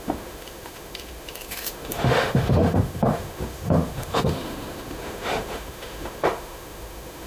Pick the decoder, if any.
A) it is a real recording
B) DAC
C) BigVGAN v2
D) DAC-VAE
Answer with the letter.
D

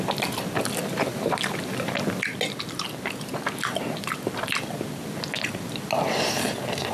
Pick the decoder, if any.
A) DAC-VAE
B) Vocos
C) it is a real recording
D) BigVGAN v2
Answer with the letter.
C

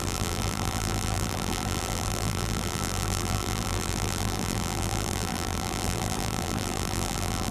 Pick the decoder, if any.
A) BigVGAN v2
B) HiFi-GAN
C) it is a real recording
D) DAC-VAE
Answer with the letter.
A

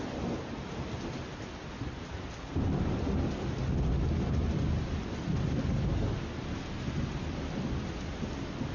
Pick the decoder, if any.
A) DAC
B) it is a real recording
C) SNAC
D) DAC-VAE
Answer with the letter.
B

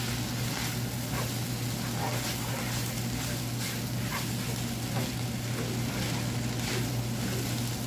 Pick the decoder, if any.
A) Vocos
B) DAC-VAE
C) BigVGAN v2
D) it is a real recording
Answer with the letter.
D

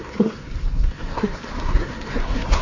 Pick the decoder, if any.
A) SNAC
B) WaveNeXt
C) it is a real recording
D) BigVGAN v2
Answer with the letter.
A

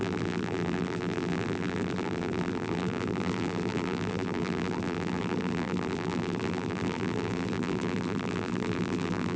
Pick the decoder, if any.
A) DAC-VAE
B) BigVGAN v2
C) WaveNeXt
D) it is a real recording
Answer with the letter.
B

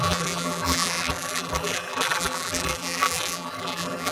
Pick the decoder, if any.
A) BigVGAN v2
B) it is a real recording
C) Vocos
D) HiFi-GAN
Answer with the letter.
A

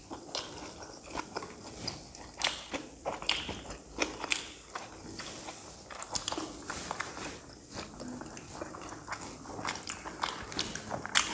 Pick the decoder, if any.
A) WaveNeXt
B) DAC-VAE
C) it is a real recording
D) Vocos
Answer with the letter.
C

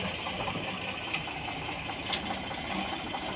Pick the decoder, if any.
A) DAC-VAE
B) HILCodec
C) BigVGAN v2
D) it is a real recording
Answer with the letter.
D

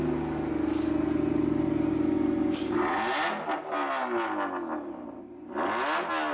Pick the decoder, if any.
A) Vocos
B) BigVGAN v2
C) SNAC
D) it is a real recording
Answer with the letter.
D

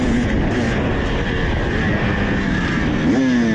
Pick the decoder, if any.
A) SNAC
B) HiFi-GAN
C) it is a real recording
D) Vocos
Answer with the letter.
C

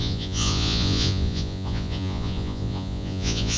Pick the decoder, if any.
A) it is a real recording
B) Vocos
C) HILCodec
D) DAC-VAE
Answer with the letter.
B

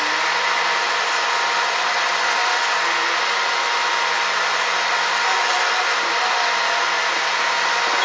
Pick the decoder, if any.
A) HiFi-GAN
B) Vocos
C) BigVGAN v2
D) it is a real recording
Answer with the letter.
D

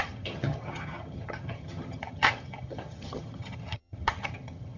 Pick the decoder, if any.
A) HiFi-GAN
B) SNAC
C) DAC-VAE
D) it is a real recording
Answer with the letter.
A